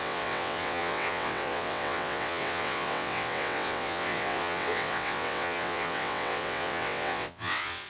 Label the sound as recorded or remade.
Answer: remade